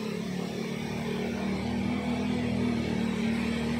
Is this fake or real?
real